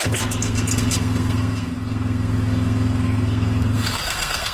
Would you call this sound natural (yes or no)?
no